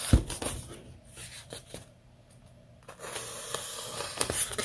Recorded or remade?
recorded